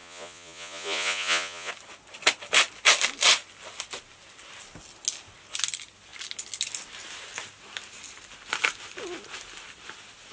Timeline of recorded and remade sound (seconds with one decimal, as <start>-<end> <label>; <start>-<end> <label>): 0.0-1.7 remade; 1.7-10.3 recorded